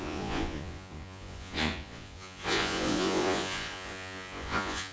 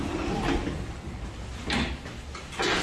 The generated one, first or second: first